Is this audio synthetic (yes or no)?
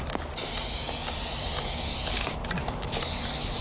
no